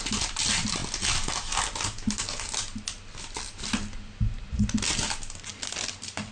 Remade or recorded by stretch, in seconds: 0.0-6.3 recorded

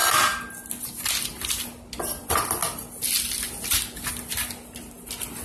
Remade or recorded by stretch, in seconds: 0.0-5.4 recorded

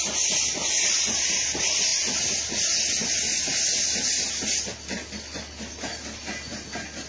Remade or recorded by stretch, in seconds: 0.0-1.9 recorded; 1.9-2.4 remade; 2.4-7.1 recorded

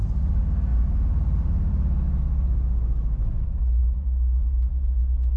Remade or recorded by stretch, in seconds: 0.0-0.7 recorded; 0.7-1.7 remade; 1.7-5.4 recorded

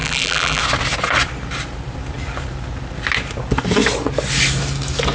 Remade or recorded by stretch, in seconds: 0.0-0.6 remade; 0.6-5.1 recorded

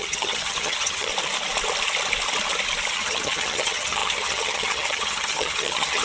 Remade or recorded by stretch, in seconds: 0.0-1.1 remade; 1.1-2.9 recorded; 2.9-6.0 remade

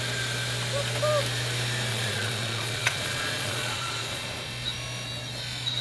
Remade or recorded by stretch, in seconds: 0.0-1.9 recorded; 1.9-4.5 remade; 4.5-5.8 recorded